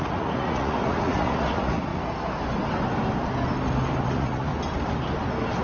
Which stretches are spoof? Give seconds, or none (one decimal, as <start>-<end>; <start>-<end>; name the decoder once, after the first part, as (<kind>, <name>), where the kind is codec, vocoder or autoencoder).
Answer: 0.0-1.9 (vocoder, Vocos); 4.0-4.5